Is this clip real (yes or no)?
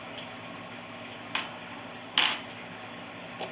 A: yes